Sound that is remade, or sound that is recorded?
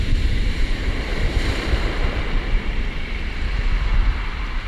remade